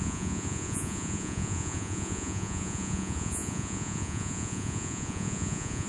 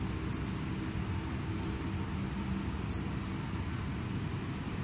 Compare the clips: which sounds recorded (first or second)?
second